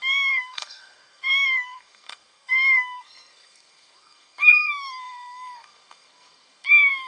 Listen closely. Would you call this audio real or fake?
fake